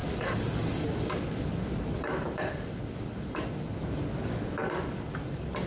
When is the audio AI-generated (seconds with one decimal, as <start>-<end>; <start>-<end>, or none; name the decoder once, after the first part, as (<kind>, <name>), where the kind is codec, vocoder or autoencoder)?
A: none